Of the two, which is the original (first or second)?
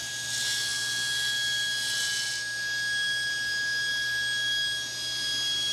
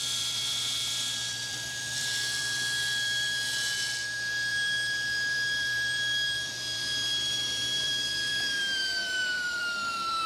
first